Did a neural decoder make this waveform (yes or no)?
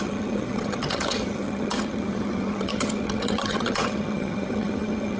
yes